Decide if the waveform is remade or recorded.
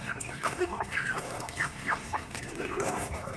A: remade